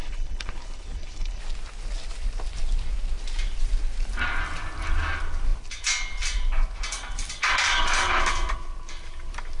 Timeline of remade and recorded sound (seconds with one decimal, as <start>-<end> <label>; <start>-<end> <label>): 0.0-1.4 remade; 1.4-9.6 recorded